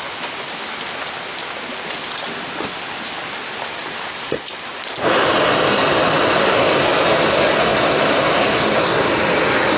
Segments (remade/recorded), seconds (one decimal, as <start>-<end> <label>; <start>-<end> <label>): 0.0-3.8 recorded; 3.8-5.8 remade; 5.8-9.8 recorded